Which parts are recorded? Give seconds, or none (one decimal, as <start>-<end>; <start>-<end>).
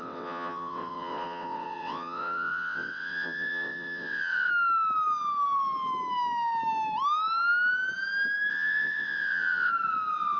4.5-8.5; 9.7-10.4